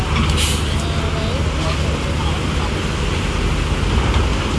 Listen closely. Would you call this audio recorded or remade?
recorded